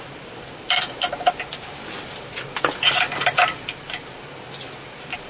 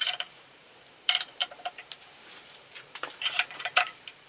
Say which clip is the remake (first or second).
second